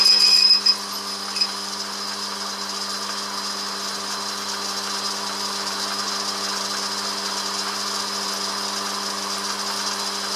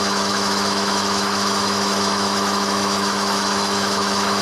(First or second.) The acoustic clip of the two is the first